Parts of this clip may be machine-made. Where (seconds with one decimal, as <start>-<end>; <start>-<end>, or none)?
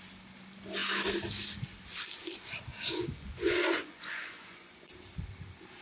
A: 2.7-4.9